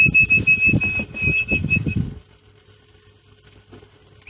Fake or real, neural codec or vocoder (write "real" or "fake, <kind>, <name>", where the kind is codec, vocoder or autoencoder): real